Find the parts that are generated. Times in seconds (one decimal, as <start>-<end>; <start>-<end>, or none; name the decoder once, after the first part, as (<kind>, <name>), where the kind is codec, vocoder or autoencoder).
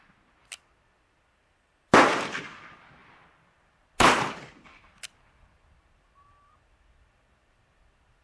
none